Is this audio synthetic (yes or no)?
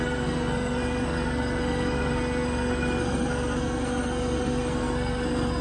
yes